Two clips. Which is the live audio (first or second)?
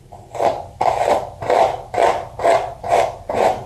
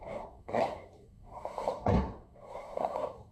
first